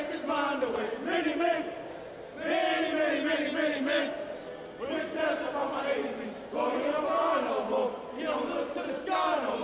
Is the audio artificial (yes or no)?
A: no